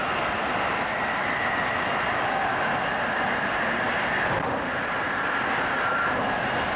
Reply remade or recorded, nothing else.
recorded